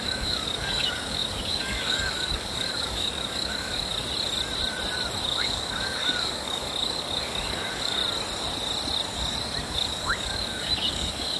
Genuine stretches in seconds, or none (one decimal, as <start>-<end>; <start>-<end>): 3.9-5.2; 8.0-9.6